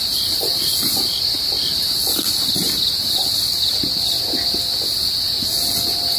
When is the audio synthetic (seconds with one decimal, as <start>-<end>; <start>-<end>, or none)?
none